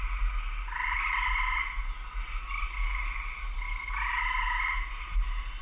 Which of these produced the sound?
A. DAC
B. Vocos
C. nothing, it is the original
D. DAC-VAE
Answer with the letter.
C